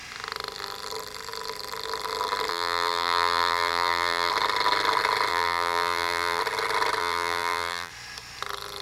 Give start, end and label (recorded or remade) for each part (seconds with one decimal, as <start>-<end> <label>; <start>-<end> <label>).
0.0-2.5 recorded; 2.5-4.3 remade; 4.3-5.3 recorded; 5.3-6.4 remade; 6.4-7.0 recorded; 7.0-7.9 remade; 7.9-8.8 recorded